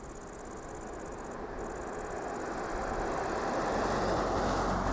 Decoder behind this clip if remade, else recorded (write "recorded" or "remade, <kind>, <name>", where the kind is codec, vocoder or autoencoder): recorded